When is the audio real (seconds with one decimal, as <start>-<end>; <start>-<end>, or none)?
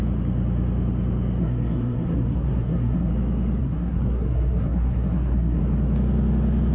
0.0-1.4; 3.1-3.6; 5.6-6.7